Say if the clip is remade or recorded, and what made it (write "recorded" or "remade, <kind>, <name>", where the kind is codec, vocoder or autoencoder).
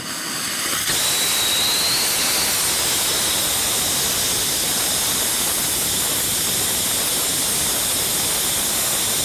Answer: recorded